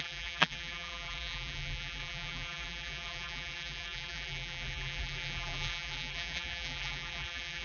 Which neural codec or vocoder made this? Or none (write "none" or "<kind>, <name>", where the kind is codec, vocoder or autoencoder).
vocoder, BigVGAN v2